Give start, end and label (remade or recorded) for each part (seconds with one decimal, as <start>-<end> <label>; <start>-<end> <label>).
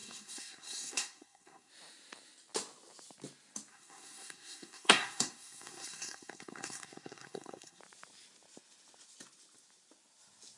0.0-1.7 remade; 1.7-3.7 recorded; 3.7-7.8 remade; 7.8-10.6 recorded